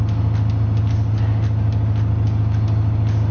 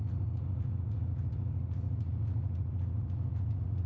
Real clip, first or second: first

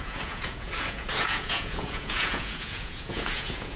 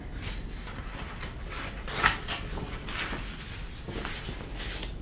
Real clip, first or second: second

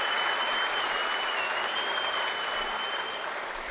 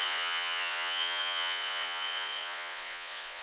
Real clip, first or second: first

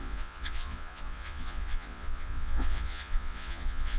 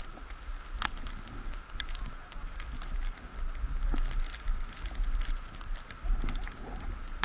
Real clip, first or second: second